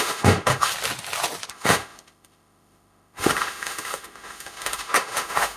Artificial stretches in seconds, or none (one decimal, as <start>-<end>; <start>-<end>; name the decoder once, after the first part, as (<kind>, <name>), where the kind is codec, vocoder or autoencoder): 0.0-0.7 (autoencoder, DAC-VAE); 1.5-5.6